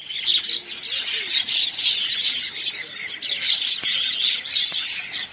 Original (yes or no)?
yes